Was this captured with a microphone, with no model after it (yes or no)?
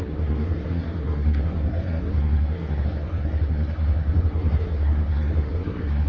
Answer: no